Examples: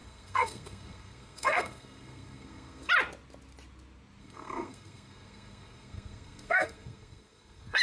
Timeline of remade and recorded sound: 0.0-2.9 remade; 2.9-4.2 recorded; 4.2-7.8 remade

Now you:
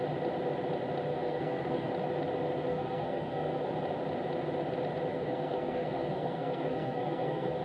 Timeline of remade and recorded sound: 0.0-1.1 recorded; 1.1-1.9 remade; 1.9-2.7 recorded; 2.7-3.7 remade; 3.7-5.1 recorded; 5.1-7.6 remade

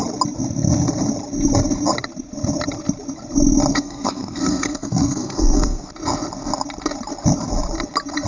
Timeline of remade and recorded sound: 0.0-3.7 recorded; 3.7-5.9 remade; 5.9-8.3 recorded

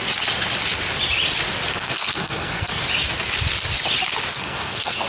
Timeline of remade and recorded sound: 0.0-1.7 recorded; 1.7-2.8 remade; 2.8-4.3 recorded; 4.3-5.1 remade

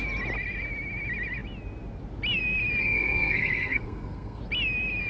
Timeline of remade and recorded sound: 0.0-2.8 recorded; 2.8-4.4 remade; 4.4-5.1 recorded

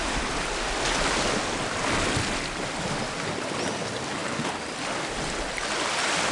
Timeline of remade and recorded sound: 0.0-6.3 recorded

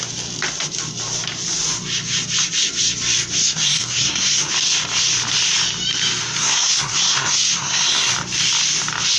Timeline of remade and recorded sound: 0.0-3.4 recorded; 3.4-4.5 remade; 4.5-6.4 recorded; 6.4-8.1 remade; 8.1-9.2 recorded

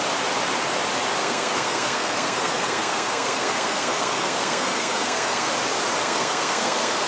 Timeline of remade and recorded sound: 0.0-1.2 recorded; 1.2-5.5 remade; 5.5-6.0 recorded; 6.0-7.1 remade